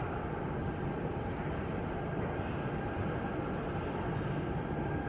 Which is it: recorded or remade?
recorded